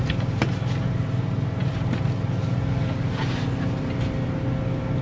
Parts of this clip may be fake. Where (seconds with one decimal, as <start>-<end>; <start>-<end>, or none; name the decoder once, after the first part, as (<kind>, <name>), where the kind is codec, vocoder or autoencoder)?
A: none